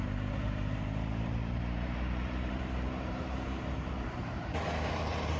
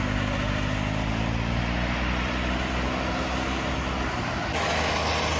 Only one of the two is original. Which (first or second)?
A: second